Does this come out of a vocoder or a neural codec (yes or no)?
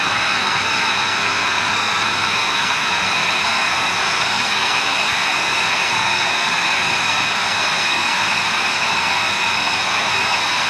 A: yes